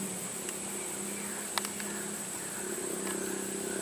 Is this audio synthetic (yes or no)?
no